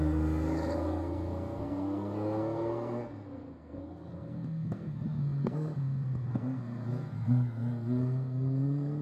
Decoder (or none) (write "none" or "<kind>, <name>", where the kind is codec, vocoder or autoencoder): codec, SNAC